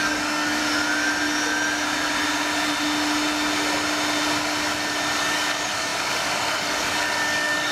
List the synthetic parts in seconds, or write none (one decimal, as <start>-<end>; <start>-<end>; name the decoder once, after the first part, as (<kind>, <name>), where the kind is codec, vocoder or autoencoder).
0.0-0.6 (codec, DAC); 5.2-7.7